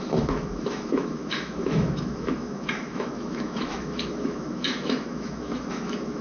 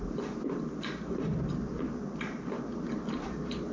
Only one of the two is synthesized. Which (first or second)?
first